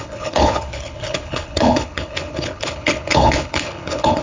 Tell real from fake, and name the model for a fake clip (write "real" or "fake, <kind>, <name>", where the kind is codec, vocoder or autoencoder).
fake, codec, HILCodec